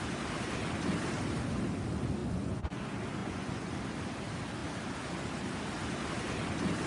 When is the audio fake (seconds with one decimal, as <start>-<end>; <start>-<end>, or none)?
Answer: 2.2-2.8; 3.2-3.7